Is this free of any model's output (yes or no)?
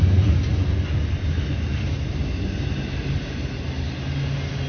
yes